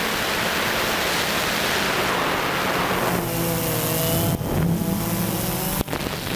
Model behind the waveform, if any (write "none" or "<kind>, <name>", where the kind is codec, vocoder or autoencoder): none